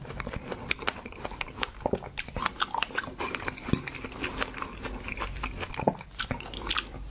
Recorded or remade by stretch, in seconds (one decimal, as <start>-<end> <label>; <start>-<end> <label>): 0.0-1.7 remade; 1.7-5.7 recorded; 5.7-7.1 remade